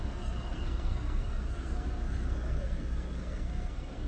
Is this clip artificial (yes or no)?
yes